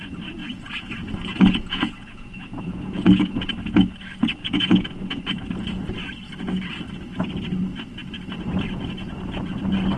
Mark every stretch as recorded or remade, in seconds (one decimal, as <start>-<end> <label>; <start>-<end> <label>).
0.0-0.4 recorded; 0.4-3.5 remade; 3.5-4.4 recorded; 4.4-5.2 remade; 5.2-10.0 recorded